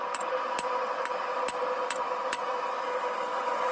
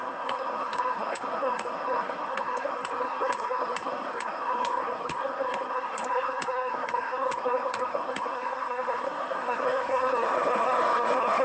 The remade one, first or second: second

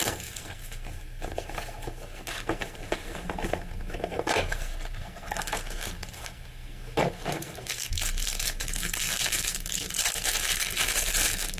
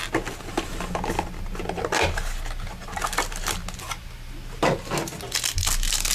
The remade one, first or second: first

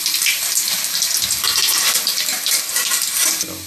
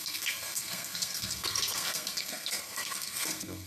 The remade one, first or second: second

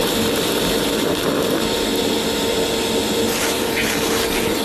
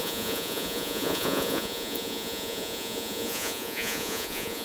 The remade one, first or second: second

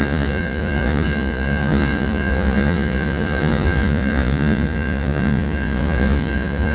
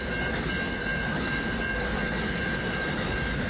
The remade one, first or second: first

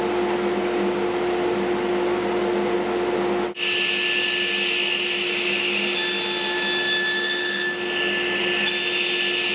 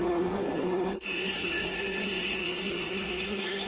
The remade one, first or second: second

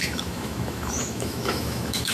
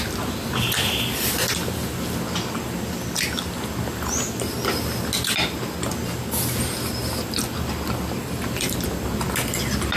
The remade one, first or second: first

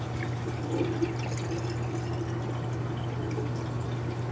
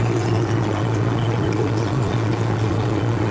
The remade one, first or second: second